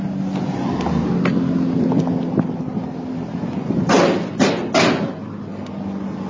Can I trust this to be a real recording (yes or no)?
yes